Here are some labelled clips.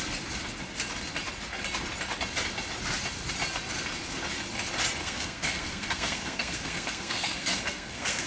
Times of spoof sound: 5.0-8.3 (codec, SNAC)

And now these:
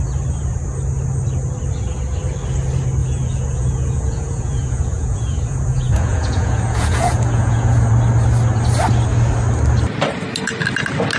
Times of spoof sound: 3.0-7.9 (vocoder, Vocos)

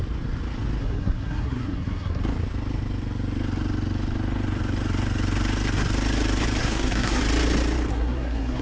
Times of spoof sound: 0.8-2.2 (codec, SNAC); 6.6-7.2; 7.9-8.6

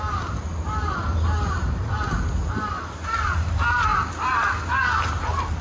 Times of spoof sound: none

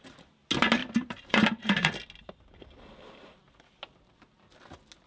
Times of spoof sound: 0.8-1.9 (vocoder, BigVGAN v2)